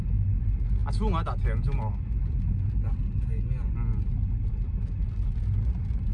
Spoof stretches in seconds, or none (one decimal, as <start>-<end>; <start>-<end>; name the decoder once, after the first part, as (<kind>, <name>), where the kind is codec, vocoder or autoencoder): none